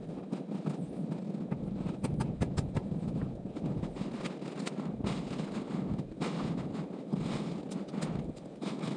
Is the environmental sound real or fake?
real